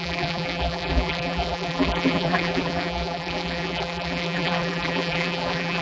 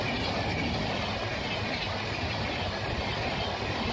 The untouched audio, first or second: second